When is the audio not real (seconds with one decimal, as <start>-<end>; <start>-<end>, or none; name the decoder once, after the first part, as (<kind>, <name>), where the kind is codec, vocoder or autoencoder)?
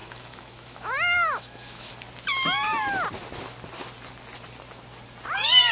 0.0-1.9 (autoencoder, DAC-VAE)